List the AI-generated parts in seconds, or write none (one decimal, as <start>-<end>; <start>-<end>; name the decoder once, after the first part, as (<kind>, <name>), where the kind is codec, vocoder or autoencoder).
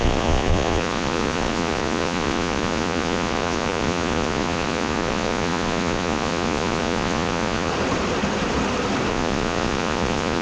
0.0-7.7 (vocoder, Vocos); 9.1-10.4